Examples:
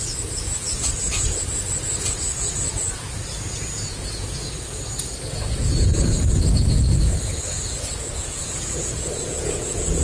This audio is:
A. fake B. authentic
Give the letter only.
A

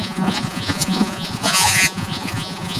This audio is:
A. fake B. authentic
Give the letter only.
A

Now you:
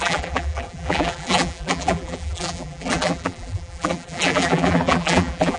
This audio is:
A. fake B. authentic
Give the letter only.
A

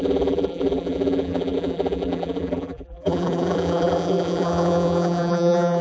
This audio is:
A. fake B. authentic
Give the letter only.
A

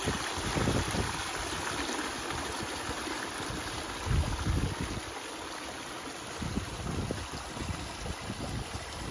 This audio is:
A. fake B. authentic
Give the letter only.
B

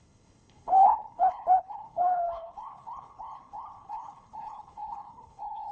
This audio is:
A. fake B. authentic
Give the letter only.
A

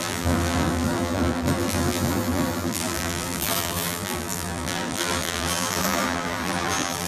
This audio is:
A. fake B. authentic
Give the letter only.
A